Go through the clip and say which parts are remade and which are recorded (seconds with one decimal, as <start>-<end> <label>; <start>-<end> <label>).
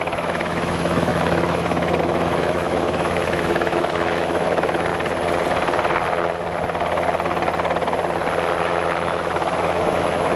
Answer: 0.0-4.9 remade; 4.9-8.6 recorded; 8.6-10.4 remade